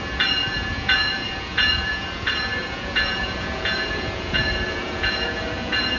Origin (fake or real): fake